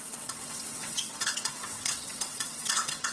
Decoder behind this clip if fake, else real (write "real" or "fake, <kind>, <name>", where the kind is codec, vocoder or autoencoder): fake, vocoder, WaveNeXt